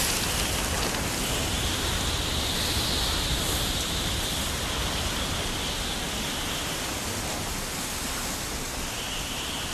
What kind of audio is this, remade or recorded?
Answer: recorded